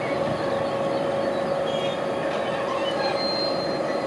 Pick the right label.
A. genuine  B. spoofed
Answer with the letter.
A